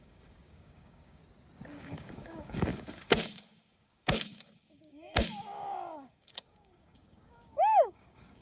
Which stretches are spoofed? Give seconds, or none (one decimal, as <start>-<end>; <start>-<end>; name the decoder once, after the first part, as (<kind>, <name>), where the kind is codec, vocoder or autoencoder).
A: 0.0-1.2 (codec, DAC); 1.8-8.4

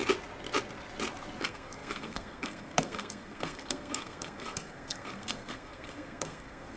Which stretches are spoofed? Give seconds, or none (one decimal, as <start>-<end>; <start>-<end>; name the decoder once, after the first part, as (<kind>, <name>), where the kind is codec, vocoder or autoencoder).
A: 1.4-6.8 (codec, SNAC)

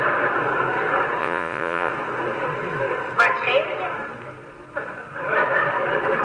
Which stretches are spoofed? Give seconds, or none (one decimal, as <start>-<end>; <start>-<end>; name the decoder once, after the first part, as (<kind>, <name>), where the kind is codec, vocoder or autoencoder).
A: 1.2-1.9 (vocoder, Vocos)

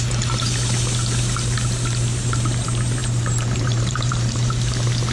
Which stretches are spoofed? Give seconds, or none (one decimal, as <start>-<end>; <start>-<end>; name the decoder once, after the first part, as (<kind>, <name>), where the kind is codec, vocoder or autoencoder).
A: 3.0-4.5 (vocoder, BigVGAN v2)

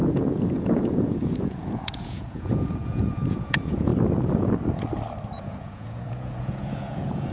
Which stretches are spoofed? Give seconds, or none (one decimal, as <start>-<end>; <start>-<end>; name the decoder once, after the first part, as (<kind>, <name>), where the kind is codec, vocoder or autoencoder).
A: 0.0-3.9 (vocoder, Vocos); 5.4-7.3